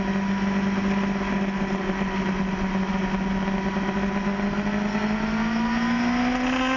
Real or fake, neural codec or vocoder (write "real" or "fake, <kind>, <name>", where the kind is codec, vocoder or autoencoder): real